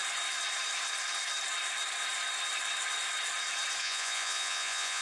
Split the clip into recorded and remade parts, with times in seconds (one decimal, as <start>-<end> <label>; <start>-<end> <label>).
0.0-3.8 recorded; 3.8-5.0 remade